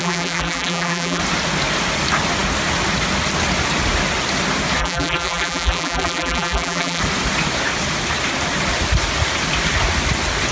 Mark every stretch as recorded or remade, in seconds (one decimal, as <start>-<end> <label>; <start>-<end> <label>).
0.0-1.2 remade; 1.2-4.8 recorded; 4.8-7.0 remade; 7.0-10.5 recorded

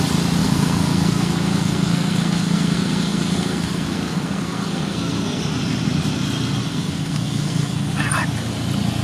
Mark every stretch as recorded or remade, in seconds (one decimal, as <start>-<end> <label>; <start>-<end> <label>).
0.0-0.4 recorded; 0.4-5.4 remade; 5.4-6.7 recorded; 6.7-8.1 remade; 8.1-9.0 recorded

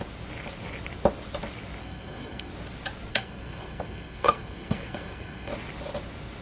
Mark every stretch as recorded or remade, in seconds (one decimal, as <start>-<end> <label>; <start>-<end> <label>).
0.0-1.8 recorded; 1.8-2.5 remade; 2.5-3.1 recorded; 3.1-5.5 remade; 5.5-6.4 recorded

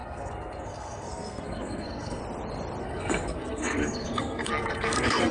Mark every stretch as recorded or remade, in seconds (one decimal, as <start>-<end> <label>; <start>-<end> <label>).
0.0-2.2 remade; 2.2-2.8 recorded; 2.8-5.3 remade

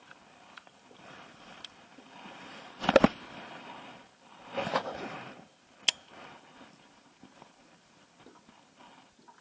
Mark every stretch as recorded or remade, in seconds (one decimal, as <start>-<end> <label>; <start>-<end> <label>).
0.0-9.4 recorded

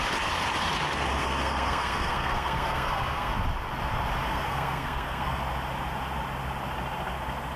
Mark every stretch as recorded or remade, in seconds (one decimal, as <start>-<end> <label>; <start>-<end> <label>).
0.0-1.2 recorded; 1.2-3.3 remade; 3.3-4.3 recorded; 4.3-5.4 remade; 5.4-7.6 recorded

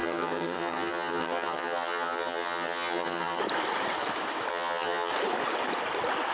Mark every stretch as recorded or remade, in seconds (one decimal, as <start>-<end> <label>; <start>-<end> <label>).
0.0-3.4 remade; 3.4-4.5 recorded; 4.5-5.1 remade; 5.1-6.3 recorded